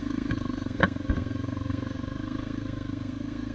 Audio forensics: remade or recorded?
remade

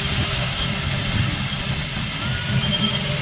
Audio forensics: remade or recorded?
recorded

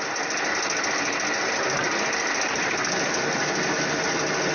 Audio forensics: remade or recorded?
recorded